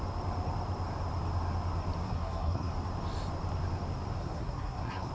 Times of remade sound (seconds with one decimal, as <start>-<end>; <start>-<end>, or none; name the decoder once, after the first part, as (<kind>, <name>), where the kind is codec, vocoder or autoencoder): 2.0-2.7 (codec, SNAC); 4.2-5.1